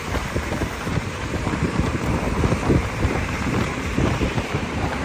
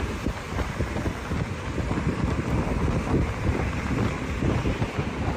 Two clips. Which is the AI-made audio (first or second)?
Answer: first